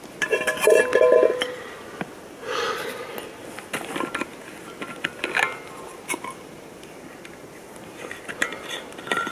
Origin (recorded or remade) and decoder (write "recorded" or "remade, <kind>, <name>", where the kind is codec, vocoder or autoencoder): recorded